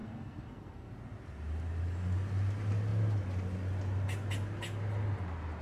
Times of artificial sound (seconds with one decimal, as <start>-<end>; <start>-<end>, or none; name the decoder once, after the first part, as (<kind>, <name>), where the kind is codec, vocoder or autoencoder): 0.0-0.9 (codec, SNAC)